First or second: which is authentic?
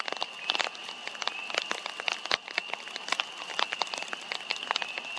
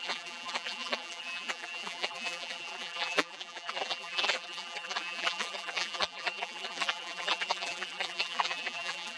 first